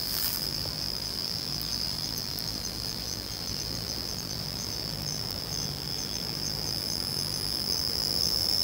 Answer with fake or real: fake